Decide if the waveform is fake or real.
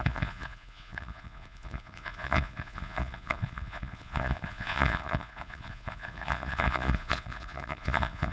fake